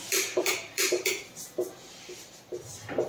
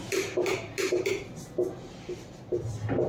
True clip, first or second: second